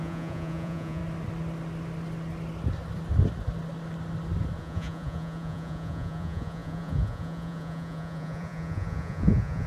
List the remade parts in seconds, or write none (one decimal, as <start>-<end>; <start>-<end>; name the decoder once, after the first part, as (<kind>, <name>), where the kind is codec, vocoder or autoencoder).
0.0-1.0 (vocoder, Vocos); 4.6-9.7